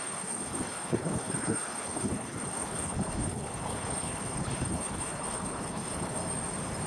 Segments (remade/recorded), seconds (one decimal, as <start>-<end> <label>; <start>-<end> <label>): 0.0-6.2 remade; 6.2-6.9 recorded